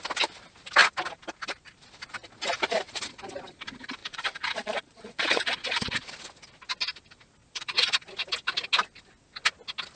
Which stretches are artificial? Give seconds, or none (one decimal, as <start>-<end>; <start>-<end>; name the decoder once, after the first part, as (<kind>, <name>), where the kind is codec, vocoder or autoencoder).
4.0-6.0 (vocoder, Vocos); 7.4-8.1